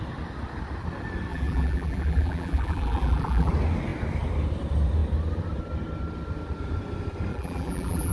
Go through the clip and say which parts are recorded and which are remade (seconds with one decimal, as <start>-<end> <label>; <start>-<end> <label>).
0.0-1.3 recorded; 1.3-3.5 remade; 3.5-7.3 recorded; 7.3-8.1 remade